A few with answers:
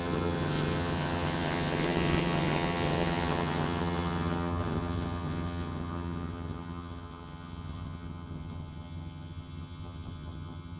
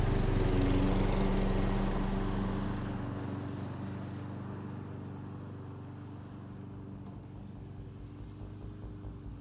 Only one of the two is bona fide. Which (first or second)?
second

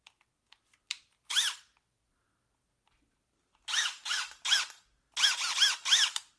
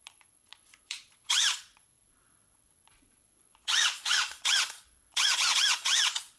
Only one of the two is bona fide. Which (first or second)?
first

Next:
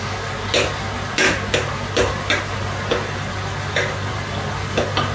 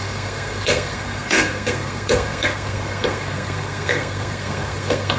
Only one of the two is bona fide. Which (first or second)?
first